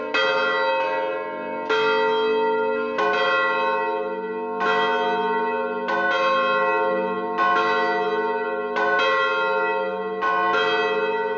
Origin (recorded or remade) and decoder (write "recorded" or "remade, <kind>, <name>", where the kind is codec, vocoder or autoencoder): recorded